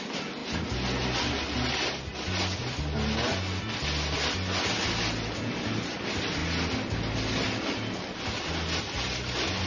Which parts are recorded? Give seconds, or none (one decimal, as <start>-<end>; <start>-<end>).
0.0-9.7